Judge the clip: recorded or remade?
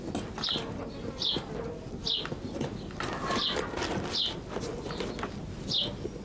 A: recorded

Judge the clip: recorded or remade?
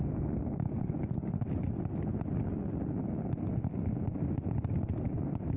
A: recorded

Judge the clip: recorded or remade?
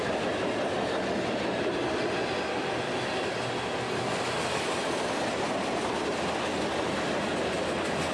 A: recorded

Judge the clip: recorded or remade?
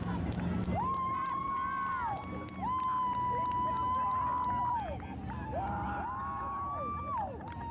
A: recorded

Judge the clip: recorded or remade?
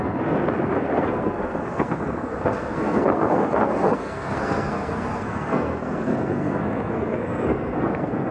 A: remade